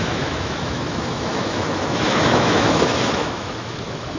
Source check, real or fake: fake